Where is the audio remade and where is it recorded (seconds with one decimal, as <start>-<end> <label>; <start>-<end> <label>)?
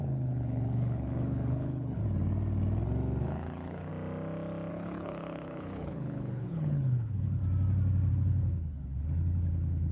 0.0-2.0 remade; 2.0-3.2 recorded; 3.2-3.9 remade; 3.9-4.7 recorded; 4.7-7.4 remade; 7.4-8.1 recorded; 8.1-9.9 remade